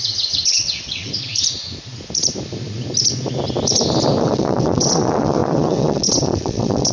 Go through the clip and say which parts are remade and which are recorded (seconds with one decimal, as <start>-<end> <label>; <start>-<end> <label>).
0.0-1.1 remade; 1.1-4.2 recorded; 4.2-6.9 remade